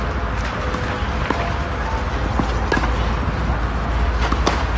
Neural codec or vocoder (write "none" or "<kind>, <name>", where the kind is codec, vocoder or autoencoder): none